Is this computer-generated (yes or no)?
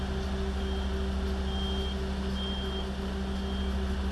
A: no